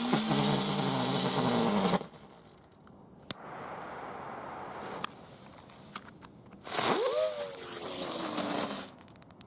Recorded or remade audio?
recorded